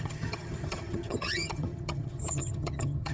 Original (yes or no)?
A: no